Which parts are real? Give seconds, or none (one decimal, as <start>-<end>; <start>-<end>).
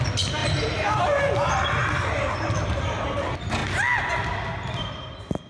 0.0-0.4; 1.2-1.8; 2.7-5.5